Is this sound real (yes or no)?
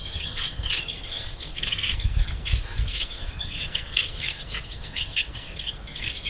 no